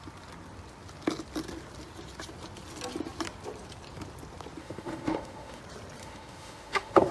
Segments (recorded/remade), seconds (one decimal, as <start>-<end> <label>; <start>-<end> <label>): 0.0-4.6 recorded; 4.6-5.6 remade; 5.6-6.0 recorded; 6.0-7.1 remade